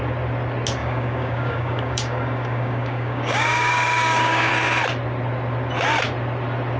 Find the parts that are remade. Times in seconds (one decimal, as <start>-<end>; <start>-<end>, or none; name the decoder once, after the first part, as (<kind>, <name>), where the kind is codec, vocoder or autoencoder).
0.8-4.5 (codec, DAC)